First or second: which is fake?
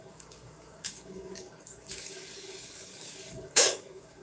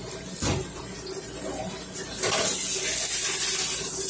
first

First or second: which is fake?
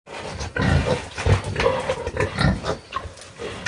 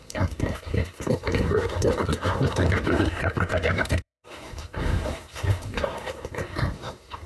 second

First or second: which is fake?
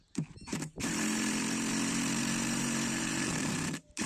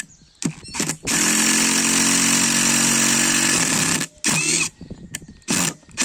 first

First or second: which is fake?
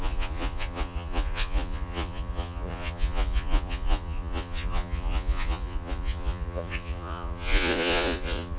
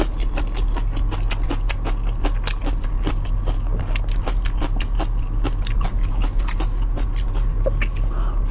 first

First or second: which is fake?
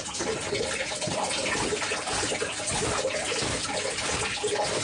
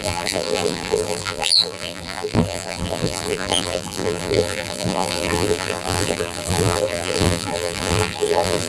second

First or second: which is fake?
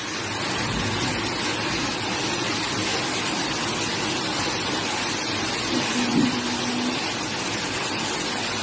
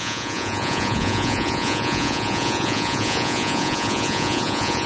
second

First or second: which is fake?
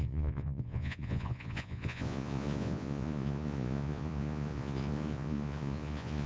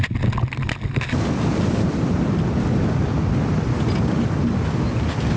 first